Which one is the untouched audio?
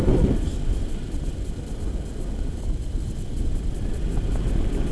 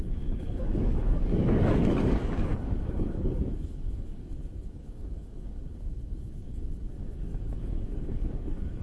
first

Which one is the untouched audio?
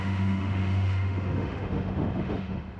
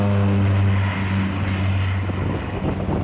second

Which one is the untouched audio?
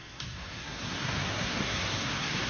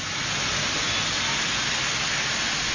second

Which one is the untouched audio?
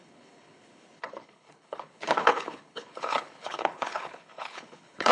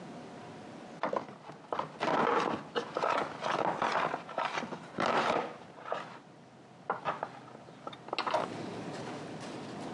second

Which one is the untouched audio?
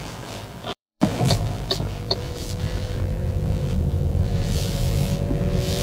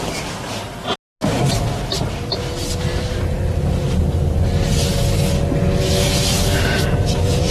second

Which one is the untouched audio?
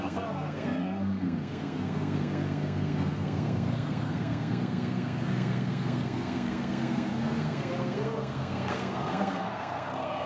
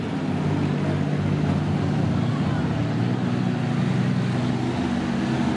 second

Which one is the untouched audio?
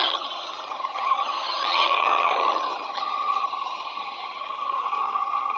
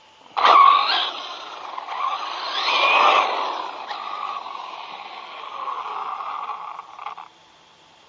second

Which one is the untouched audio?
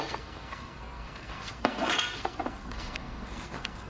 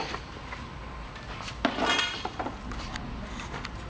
second